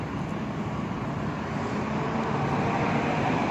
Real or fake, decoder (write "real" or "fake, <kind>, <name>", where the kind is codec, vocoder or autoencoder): real